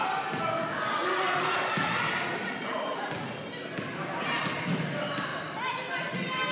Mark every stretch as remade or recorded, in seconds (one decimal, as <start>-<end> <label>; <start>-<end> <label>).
0.0-6.5 recorded